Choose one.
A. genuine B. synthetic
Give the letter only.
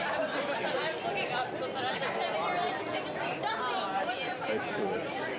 A